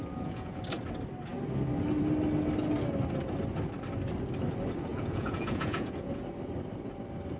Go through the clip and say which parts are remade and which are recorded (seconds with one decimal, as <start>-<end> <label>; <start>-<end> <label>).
0.0-0.6 remade; 0.6-4.9 recorded; 4.9-6.2 remade; 6.2-7.4 recorded